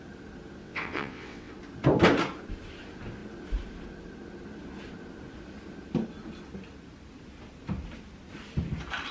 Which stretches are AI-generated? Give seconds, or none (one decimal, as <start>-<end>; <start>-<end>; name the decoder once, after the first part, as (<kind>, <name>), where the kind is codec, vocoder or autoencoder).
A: 0.6-1.5 (vocoder, WaveNeXt)

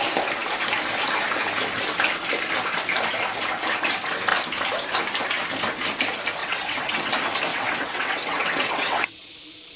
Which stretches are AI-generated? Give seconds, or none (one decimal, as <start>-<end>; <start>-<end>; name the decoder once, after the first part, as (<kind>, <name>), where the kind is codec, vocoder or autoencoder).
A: 6.4-7.1 (vocoder, WaveNeXt); 7.5-9.3

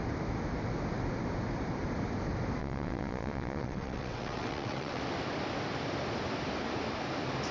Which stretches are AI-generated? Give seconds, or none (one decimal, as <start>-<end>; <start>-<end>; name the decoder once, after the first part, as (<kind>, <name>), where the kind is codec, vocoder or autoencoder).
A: 2.6-5.0 (vocoder, WaveNeXt)

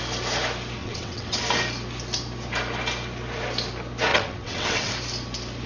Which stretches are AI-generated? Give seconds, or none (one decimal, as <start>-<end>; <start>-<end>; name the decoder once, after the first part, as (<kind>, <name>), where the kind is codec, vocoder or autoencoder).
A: 0.8-1.4 (vocoder, WaveNeXt); 4.1-4.9

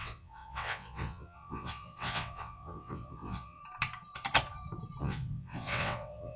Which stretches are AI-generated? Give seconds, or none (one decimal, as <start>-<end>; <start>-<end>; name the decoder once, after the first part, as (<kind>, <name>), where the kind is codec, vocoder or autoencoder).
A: 0.0-3.6 (vocoder, WaveNeXt); 5.0-6.4

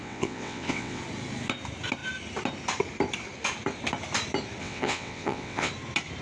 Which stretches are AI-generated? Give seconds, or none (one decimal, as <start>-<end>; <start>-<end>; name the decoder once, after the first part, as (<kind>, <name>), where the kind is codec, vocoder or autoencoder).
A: 0.0-1.0 (vocoder, WaveNeXt); 4.6-5.7

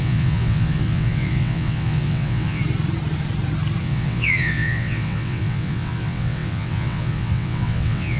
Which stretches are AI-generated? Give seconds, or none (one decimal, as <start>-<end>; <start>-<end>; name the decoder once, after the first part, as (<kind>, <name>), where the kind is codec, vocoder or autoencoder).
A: 0.0-2.6 (vocoder, WaveNeXt); 3.8-8.2